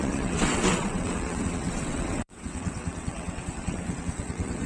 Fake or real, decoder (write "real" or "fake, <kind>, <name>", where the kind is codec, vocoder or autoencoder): fake, vocoder, WaveNeXt